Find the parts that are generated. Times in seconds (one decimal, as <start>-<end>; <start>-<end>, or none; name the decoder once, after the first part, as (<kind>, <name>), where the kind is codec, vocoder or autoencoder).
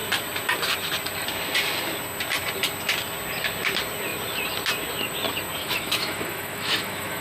5.6-7.2 (autoencoder, DAC-VAE)